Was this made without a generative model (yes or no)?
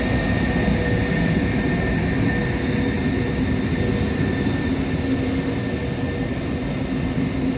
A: yes